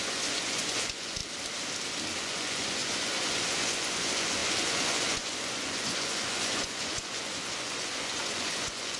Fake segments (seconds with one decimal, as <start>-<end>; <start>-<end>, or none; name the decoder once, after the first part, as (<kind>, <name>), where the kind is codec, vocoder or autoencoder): 0.0-1.2 (vocoder, Vocos); 2.2-9.0